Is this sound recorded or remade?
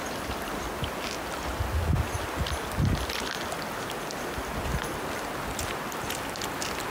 recorded